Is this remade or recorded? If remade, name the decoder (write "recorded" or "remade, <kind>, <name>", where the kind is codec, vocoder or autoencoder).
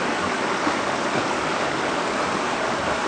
remade, codec, DAC